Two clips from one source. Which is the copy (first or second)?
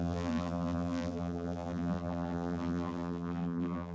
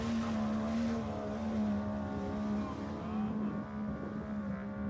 first